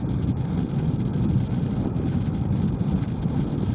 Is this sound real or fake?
real